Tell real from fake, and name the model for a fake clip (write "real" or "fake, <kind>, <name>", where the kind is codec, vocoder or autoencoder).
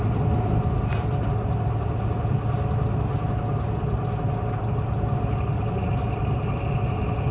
real